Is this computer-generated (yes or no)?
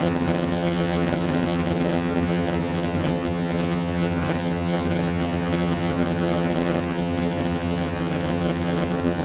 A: yes